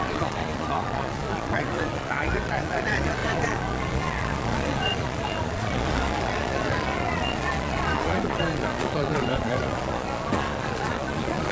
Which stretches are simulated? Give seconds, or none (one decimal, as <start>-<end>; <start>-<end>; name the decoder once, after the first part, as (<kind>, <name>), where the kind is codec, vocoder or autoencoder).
0.0-11.5 (vocoder, Vocos)